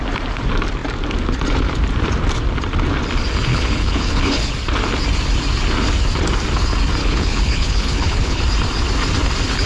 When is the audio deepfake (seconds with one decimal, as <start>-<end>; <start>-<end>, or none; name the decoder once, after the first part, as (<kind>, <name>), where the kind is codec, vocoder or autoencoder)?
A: 3.5-4.5 (codec, HILCodec); 7.0-8.4